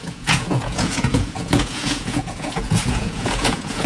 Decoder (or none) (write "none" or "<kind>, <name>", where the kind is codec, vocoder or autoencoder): vocoder, Vocos